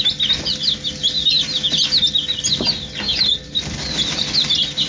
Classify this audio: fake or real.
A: real